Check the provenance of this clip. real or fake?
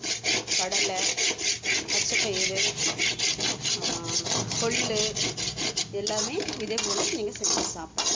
real